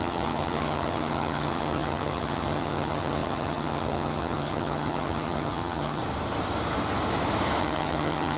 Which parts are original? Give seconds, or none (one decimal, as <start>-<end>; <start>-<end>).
6.0-7.6